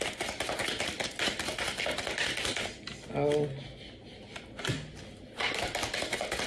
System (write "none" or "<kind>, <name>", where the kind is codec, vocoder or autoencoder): none